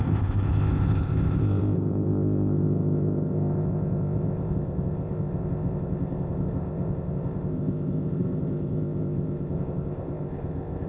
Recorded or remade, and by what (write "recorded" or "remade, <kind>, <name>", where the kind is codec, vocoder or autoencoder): remade, codec, ZipCodec